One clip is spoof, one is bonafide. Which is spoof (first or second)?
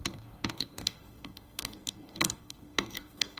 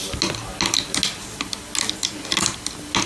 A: first